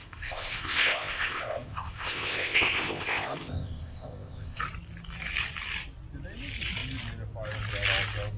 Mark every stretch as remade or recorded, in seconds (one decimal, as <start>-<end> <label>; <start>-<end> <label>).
0.0-4.6 remade; 4.6-8.4 recorded